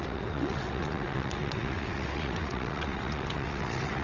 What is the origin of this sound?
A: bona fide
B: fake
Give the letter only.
B